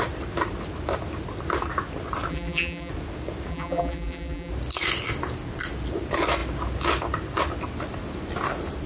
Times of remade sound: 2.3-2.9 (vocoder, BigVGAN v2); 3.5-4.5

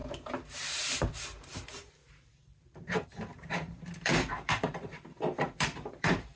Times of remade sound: 0.0-6.3 (vocoder, BigVGAN v2)

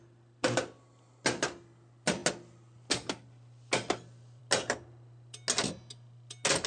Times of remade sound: none

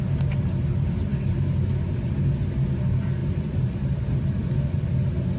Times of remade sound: 3.2-4.6 (vocoder, BigVGAN v2)